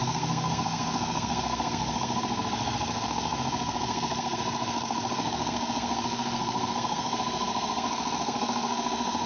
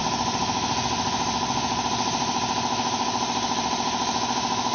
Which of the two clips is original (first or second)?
second